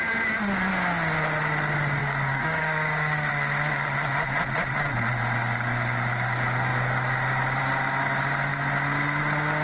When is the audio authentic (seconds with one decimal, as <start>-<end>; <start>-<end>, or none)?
0.0-2.0; 3.3-9.6